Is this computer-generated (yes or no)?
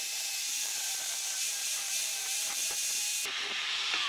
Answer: yes